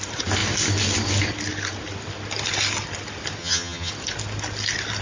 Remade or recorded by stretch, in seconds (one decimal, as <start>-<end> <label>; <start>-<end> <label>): 0.0-3.4 recorded; 3.4-3.9 remade; 3.9-5.0 recorded